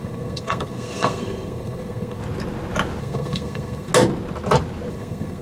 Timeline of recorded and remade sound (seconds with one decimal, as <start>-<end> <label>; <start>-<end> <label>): 0.0-2.2 remade; 2.2-3.0 recorded; 3.0-3.9 remade; 3.9-4.9 recorded; 4.9-5.4 remade